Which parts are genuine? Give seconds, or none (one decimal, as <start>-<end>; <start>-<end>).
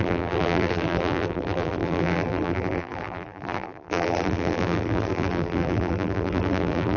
none